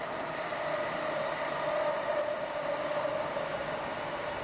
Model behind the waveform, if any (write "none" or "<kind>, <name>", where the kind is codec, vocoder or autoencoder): none